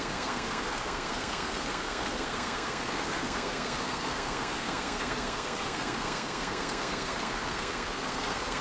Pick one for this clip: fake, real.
fake